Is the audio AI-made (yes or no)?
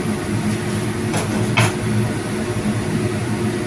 no